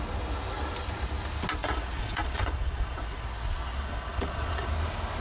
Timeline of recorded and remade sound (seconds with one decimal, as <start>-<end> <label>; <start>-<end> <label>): 0.0-1.6 recorded; 1.6-4.7 remade; 4.7-5.2 recorded